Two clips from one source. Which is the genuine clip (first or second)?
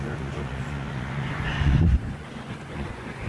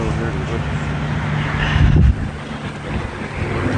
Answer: second